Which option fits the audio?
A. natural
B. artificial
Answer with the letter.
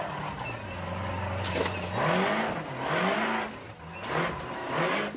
A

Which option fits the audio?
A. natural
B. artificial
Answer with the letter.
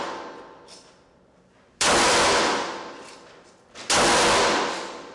A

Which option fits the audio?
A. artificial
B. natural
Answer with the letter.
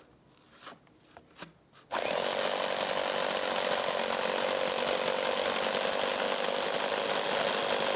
B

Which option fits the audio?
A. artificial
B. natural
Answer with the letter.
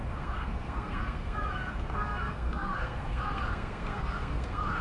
A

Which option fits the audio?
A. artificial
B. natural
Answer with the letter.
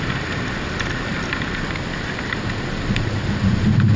B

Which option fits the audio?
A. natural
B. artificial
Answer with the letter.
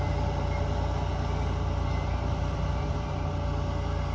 A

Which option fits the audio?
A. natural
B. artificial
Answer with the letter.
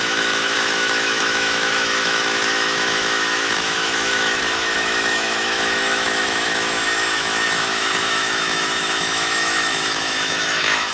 B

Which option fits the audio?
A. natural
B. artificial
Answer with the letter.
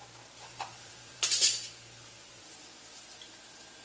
B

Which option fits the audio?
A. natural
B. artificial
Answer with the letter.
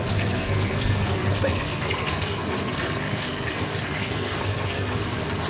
B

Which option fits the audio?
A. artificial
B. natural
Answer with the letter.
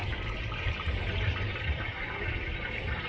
A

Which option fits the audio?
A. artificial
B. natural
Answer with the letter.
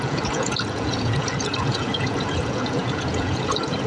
A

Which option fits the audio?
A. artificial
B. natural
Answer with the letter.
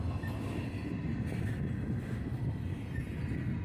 B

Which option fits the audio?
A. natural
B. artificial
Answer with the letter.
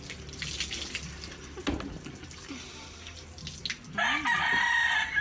A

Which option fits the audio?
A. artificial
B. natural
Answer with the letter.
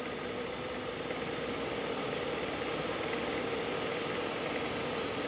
B